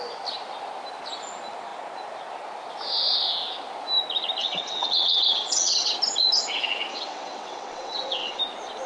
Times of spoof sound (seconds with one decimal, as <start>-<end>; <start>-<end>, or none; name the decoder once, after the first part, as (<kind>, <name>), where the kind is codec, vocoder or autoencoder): 4.4-5.9 (vocoder, WaveNeXt); 6.9-8.4